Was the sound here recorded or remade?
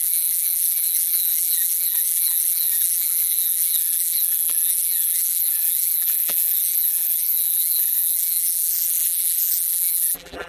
remade